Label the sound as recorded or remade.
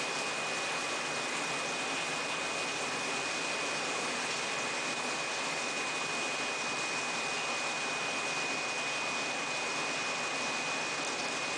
recorded